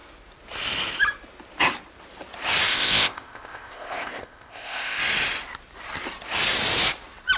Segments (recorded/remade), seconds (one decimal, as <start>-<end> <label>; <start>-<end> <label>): 0.0-2.7 recorded; 2.7-5.0 remade; 5.0-7.4 recorded